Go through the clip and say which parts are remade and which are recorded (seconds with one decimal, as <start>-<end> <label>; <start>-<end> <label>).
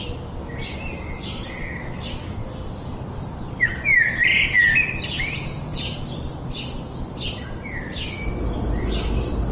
0.0-9.5 recorded